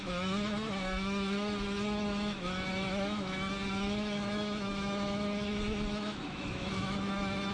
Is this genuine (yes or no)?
no